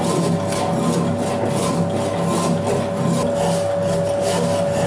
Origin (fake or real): real